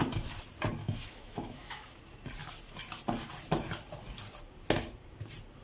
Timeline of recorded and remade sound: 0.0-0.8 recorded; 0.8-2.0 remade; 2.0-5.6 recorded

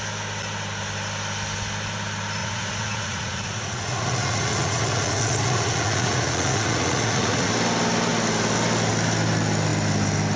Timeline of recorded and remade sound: 0.0-2.4 recorded; 2.4-7.5 remade; 7.5-10.4 recorded

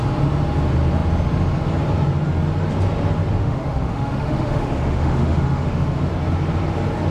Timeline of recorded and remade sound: 0.0-3.4 recorded; 3.4-6.1 remade; 6.1-7.1 recorded

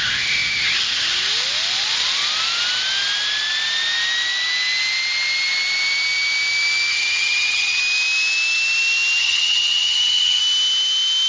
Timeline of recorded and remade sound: 0.0-6.9 recorded; 6.9-7.8 remade; 7.8-9.2 recorded; 9.2-10.4 remade; 10.4-11.3 recorded

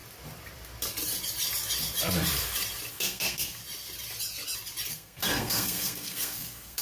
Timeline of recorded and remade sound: 0.0-2.9 recorded; 2.9-3.6 remade; 3.6-4.9 recorded; 4.9-6.8 remade

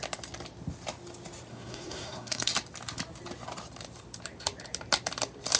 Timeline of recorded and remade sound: 0.0-1.5 recorded; 1.5-2.5 remade; 2.5-5.6 recorded